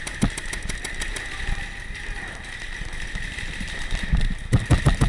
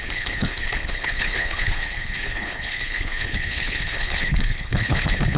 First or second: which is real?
first